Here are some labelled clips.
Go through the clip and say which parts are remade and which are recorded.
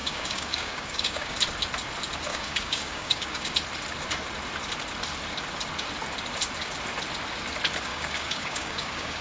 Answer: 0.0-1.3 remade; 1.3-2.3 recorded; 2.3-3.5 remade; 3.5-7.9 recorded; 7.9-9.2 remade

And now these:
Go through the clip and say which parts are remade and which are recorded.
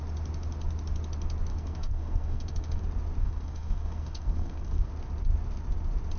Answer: 0.0-1.5 recorded; 1.5-2.8 remade; 2.8-3.2 recorded; 3.2-4.9 remade; 4.9-6.2 recorded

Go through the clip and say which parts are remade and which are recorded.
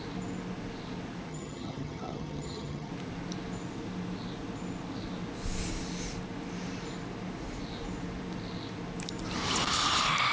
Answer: 0.0-1.3 recorded; 1.3-2.9 remade; 2.9-10.3 recorded